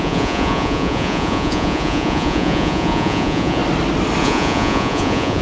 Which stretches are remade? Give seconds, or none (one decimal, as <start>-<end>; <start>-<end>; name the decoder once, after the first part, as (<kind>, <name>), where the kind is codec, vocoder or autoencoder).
0.0-3.6 (vocoder, Vocos); 4.2-5.4